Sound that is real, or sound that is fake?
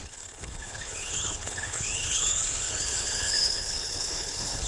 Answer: fake